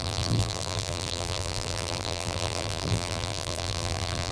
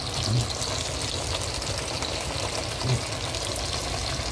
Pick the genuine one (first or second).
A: second